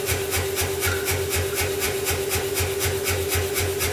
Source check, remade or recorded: recorded